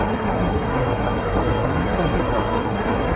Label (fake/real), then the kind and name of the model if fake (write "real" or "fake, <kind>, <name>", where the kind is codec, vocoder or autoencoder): fake, codec, SNAC